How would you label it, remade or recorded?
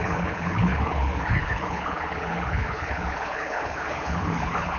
remade